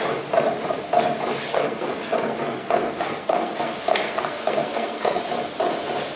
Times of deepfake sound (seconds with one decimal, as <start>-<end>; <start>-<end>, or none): 1.5-5.2